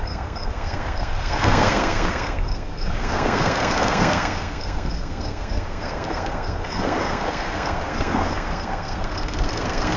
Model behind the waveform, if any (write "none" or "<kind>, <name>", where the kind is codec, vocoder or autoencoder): codec, SNAC